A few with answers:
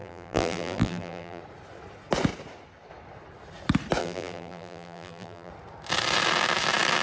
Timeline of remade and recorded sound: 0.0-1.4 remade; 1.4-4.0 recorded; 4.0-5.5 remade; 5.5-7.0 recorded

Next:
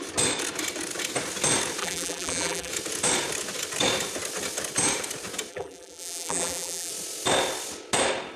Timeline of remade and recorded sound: 0.0-1.8 recorded; 1.8-2.7 remade; 2.7-5.5 recorded; 5.5-6.9 remade; 6.9-8.4 recorded

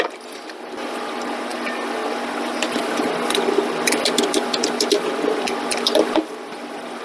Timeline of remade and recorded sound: 0.0-7.0 recorded

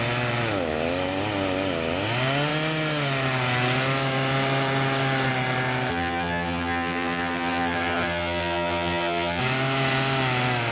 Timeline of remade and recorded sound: 0.0-5.9 recorded; 5.9-9.4 remade; 9.4-10.7 recorded

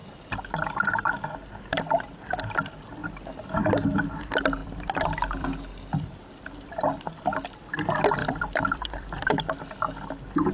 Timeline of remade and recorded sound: 0.0-4.6 recorded; 4.6-7.5 remade; 7.5-8.2 recorded; 8.2-9.6 remade; 9.6-10.5 recorded

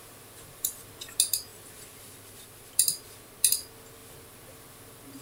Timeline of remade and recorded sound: 0.0-0.9 remade; 0.9-1.5 recorded; 1.5-2.7 remade; 2.7-4.0 recorded; 4.0-5.2 remade

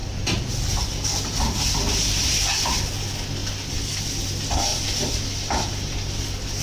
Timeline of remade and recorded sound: 0.0-0.8 remade; 0.8-2.2 recorded; 2.2-2.7 remade; 2.7-3.4 recorded; 3.4-4.0 remade; 4.0-4.7 recorded; 4.7-5.7 remade; 5.7-6.6 recorded

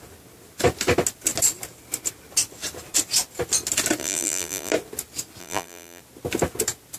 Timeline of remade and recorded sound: 0.0-4.0 recorded; 4.0-4.7 remade; 4.7-5.4 recorded; 5.4-6.0 remade; 6.0-7.0 recorded